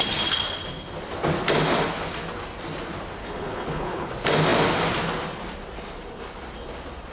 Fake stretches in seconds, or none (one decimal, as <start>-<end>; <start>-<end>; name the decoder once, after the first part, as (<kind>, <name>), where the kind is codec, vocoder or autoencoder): 3.2-4.1 (codec, HILCodec)